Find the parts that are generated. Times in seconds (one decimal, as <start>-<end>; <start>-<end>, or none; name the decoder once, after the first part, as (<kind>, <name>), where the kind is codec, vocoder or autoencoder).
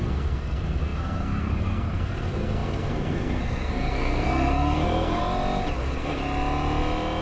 0.0-5.2 (codec, SNAC); 5.8-6.2